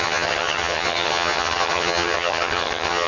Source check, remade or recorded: remade